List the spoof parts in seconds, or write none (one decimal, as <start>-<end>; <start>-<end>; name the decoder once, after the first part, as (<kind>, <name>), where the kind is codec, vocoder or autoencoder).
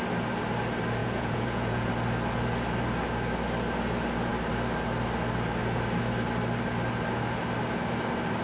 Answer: 1.0-1.9 (vocoder, Vocos)